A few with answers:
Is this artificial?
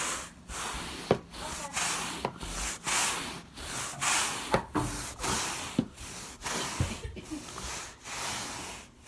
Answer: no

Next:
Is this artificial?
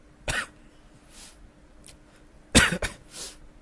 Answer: no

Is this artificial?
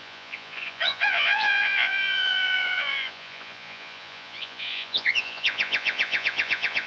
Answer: yes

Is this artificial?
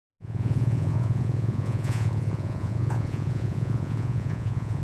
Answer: yes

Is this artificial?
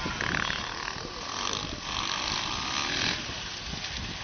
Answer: no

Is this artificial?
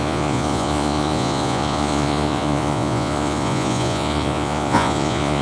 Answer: yes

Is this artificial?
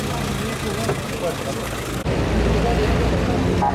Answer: no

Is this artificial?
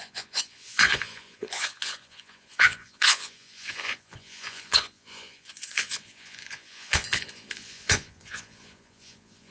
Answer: yes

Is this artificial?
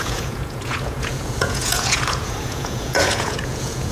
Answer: yes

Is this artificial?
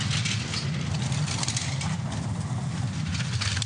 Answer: no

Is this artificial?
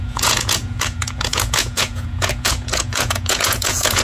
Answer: yes